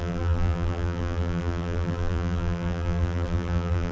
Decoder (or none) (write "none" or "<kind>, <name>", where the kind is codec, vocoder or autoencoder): vocoder, BigVGAN v2